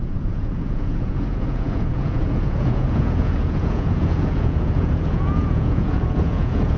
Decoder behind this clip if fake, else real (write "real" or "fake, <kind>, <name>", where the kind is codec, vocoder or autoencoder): fake, vocoder, Vocos